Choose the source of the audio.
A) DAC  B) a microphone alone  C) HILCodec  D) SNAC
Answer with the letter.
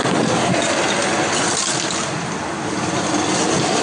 B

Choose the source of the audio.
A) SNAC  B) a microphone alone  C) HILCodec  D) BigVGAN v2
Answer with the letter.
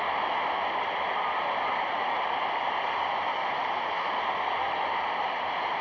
B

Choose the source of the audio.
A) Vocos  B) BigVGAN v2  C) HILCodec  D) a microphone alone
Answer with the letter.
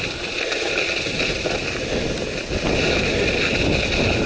D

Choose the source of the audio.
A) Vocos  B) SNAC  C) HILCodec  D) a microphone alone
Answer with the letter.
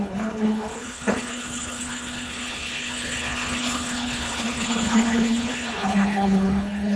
C